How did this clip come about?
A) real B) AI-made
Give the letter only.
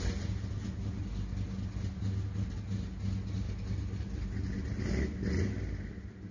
A